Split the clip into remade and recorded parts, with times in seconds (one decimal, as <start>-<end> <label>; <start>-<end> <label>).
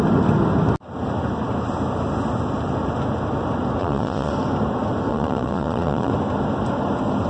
0.0-3.8 recorded; 3.8-4.3 remade; 4.3-5.1 recorded; 5.1-6.1 remade; 6.1-7.3 recorded